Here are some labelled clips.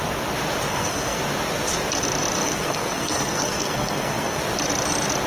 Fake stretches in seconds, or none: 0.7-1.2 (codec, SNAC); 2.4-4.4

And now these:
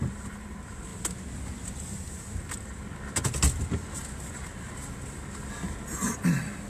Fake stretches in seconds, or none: none

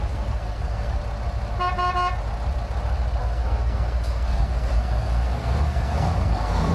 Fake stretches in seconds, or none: 0.0-1.0 (codec, SNAC); 3.2-6.7

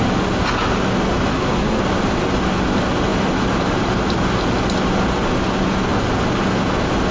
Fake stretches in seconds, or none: 1.3-1.8 (codec, SNAC)

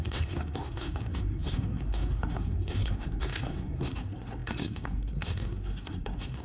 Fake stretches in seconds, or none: 0.0-6.4 (codec, SNAC)

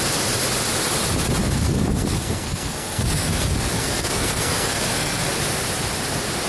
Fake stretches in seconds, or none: 1.4-5.3 (codec, SNAC)